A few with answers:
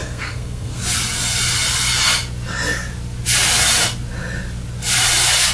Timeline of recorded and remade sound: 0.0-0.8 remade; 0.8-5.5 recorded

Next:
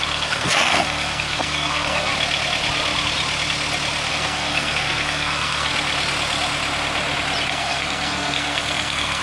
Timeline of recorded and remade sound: 0.0-2.1 remade; 2.1-4.1 recorded; 4.1-5.7 remade; 5.7-7.5 recorded; 7.5-9.2 remade